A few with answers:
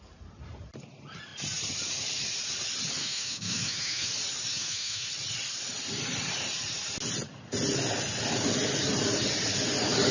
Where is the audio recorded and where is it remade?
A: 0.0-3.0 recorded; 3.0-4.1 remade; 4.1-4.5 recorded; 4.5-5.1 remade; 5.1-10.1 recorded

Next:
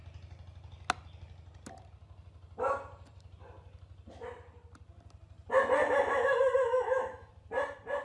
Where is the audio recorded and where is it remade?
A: 0.0-5.8 recorded; 5.8-7.3 remade; 7.3-8.0 recorded

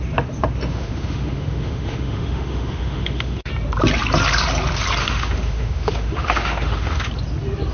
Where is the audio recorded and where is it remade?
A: 0.0-0.7 recorded; 0.7-3.5 remade; 3.5-5.0 recorded; 5.0-7.1 remade; 7.1-7.7 recorded

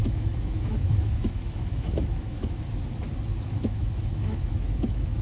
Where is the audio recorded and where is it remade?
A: 0.0-2.6 remade; 2.6-3.3 recorded; 3.3-5.2 remade